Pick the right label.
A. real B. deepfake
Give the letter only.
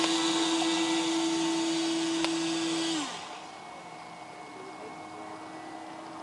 A